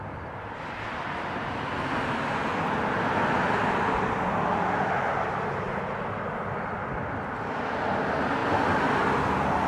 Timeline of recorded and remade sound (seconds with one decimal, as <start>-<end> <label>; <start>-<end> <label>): 0.0-9.7 recorded